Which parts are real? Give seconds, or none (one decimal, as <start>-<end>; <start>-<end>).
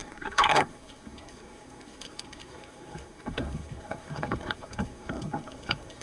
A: none